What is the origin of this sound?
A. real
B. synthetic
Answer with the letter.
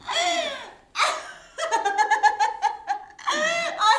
A